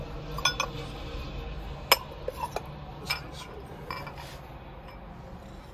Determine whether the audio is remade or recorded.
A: recorded